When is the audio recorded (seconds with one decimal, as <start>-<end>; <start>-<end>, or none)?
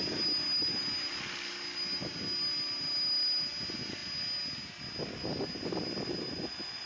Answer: 0.0-6.9